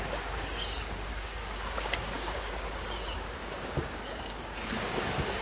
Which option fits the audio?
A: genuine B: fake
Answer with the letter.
B